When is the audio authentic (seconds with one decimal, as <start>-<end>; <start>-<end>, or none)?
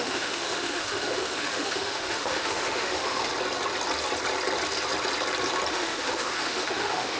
3.3-5.7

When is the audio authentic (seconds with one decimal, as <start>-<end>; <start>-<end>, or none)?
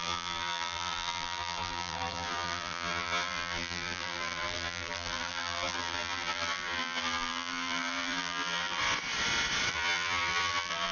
8.8-9.7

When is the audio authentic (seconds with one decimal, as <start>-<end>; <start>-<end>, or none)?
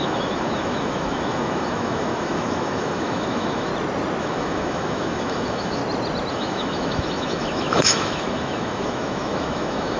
3.7-4.2; 5.8-6.3